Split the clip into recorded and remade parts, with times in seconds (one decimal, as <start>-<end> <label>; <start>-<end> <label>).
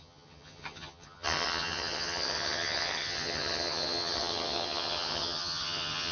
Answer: 0.0-6.1 remade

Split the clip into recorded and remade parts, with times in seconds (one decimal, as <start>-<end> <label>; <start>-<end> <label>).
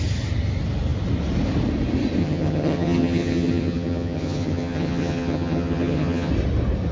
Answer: 0.0-2.2 recorded; 2.2-6.3 remade; 6.3-6.9 recorded